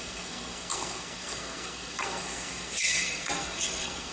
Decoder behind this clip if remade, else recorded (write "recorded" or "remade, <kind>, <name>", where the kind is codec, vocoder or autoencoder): remade, codec, SNAC